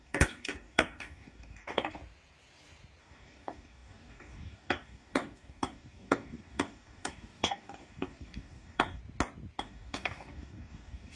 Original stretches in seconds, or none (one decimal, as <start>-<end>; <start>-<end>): 2.0-3.0; 9.0-9.6